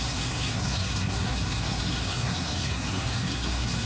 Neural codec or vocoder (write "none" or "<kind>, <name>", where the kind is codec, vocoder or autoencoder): codec, SNAC